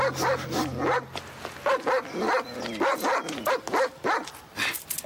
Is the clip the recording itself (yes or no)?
yes